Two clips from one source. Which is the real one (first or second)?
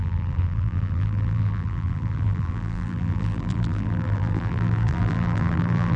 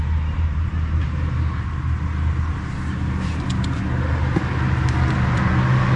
second